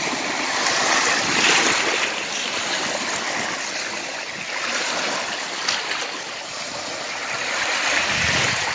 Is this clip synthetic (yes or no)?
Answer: no